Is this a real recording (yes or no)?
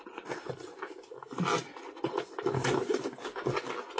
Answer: yes